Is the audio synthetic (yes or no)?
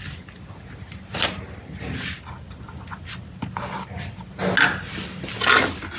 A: no